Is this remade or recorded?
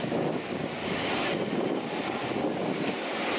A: recorded